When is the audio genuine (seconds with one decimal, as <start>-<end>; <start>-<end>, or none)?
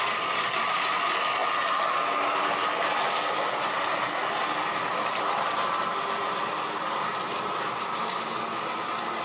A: 0.0-9.2